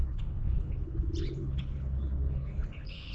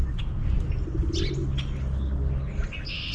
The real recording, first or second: second